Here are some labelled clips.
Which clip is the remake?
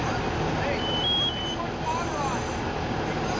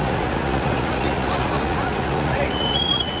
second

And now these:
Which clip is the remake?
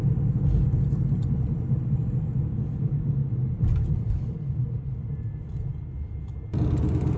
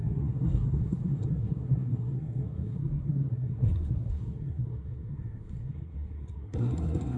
second